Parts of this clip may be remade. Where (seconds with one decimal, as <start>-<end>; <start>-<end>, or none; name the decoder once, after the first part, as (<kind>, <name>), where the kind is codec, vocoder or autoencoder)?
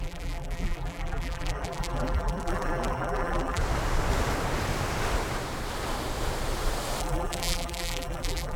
0.0-3.6 (vocoder, BigVGAN v2); 7.0-8.6